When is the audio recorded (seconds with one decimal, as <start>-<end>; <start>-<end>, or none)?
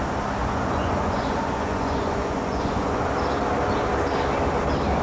0.0-0.4; 3.1-5.0